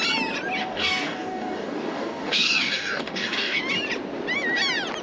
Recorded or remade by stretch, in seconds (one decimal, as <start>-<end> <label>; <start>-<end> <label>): 0.0-0.6 recorded; 0.6-3.6 remade; 3.6-5.0 recorded